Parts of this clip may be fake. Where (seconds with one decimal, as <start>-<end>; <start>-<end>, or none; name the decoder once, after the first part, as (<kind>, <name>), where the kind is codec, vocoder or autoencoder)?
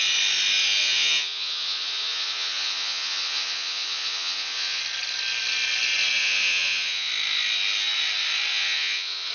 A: 0.8-4.8 (vocoder, Vocos); 6.2-7.1; 8.5-9.3